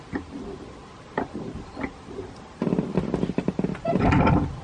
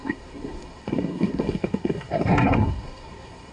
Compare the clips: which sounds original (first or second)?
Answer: first